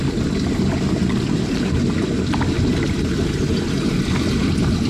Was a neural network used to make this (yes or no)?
no